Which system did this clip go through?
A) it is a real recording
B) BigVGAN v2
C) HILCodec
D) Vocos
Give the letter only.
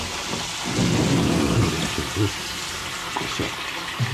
A